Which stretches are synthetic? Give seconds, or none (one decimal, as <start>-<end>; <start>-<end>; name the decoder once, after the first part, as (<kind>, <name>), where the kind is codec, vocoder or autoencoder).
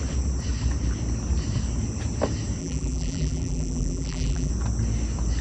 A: 2.6-4.5 (vocoder, BigVGAN v2)